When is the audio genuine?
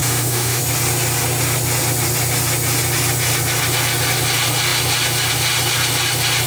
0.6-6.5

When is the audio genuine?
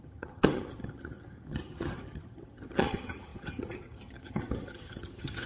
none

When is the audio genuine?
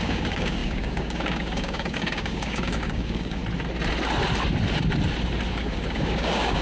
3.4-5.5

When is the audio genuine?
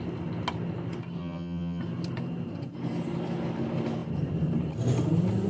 0.0-1.2; 1.8-5.5